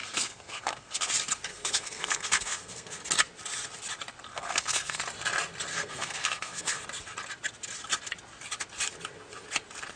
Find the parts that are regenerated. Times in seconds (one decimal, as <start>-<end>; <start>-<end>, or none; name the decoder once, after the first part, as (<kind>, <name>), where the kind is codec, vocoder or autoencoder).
0.0-1.1 (codec, SNAC); 1.5-3.0; 4.3-5.0; 5.7-6.8